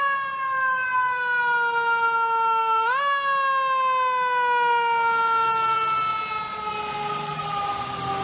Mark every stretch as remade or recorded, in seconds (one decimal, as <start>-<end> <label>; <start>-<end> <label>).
0.0-8.2 recorded